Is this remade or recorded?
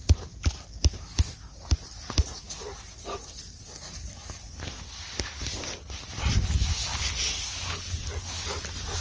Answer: recorded